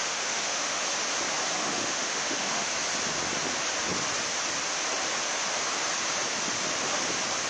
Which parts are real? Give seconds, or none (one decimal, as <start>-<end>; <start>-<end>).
0.8-1.6; 2.7-7.5

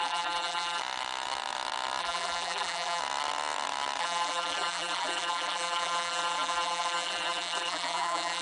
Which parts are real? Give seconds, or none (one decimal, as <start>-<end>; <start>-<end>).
0.8-2.0; 3.0-4.0